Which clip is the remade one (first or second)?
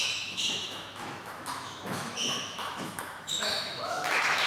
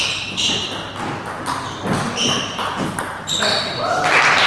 first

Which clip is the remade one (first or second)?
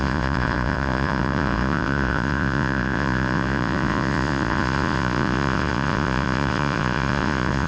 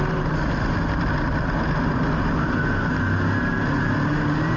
first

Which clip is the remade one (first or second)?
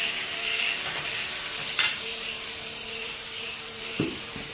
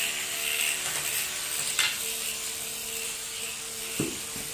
first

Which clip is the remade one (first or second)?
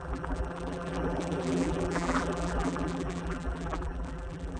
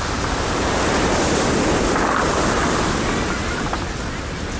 first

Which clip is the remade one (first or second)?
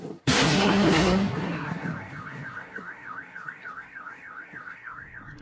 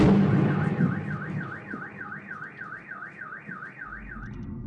first